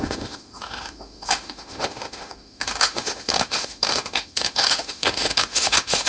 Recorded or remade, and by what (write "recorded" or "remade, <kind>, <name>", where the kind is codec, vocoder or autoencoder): remade, autoencoder, DAC-VAE